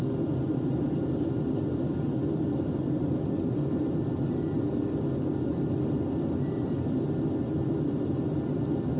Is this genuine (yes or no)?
yes